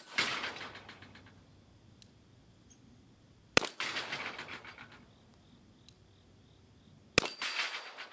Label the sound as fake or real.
real